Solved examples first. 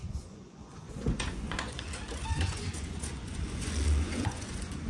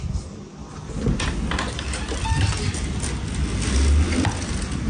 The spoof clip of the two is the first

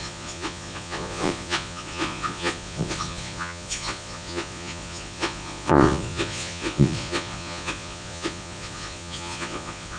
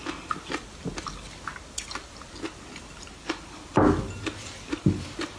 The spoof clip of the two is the first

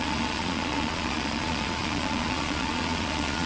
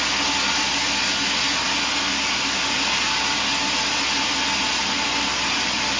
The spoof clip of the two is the first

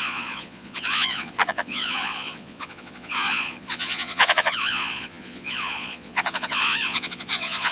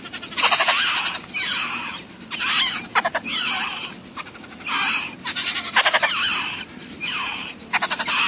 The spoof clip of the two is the first